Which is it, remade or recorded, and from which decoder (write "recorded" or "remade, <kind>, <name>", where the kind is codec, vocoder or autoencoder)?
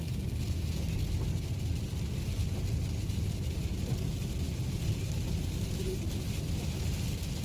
recorded